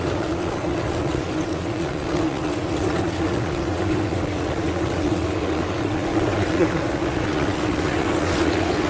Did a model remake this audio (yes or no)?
yes